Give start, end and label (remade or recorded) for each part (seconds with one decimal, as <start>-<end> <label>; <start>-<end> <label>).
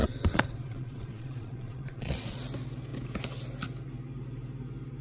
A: 0.0-2.4 remade; 2.4-5.0 recorded